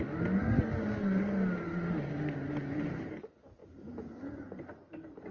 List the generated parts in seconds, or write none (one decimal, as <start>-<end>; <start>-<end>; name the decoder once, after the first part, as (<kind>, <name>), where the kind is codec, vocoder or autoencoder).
none